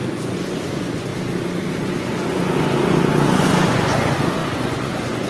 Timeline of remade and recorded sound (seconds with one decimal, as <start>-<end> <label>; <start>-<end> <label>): 0.0-1.1 remade; 1.1-1.8 recorded; 1.8-5.3 remade